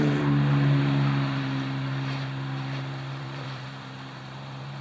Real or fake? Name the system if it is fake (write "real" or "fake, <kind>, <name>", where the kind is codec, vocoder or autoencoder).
fake, vocoder, BigVGAN v2